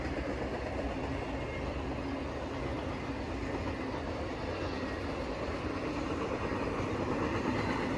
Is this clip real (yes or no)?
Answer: yes